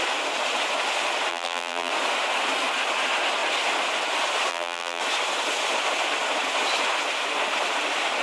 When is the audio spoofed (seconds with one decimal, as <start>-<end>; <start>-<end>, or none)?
1.3-1.9; 4.5-5.0